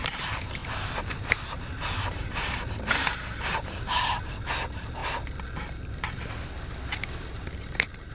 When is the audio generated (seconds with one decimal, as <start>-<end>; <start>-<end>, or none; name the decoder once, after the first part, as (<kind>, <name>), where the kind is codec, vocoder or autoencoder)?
0.0-5.0 (vocoder, BigVGAN v2); 6.9-8.1